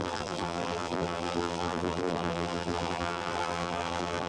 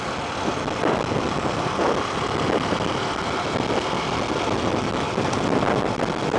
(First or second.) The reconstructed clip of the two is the first